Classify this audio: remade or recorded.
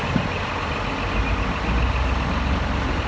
recorded